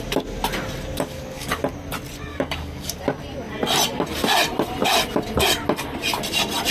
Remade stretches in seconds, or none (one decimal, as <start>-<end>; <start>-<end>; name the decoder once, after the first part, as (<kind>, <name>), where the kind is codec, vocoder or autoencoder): 0.9-1.6 (codec, DAC); 2.3-3.0